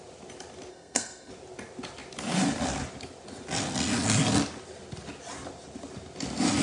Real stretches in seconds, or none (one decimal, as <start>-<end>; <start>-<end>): 0.0-0.7; 1.3-6.6